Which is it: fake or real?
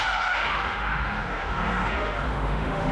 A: fake